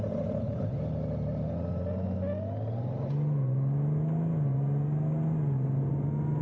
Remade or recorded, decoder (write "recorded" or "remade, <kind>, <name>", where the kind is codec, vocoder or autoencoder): recorded